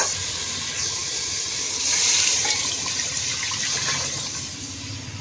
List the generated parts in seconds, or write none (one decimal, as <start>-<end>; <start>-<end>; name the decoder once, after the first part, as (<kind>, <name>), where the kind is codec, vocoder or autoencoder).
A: 1.0-3.3 (vocoder, BigVGAN v2)